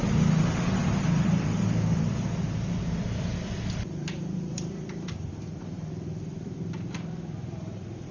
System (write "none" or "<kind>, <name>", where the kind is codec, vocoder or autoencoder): vocoder, BigVGAN v2